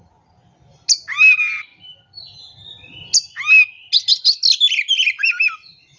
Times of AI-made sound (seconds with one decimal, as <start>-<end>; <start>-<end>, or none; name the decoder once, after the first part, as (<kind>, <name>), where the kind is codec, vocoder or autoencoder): none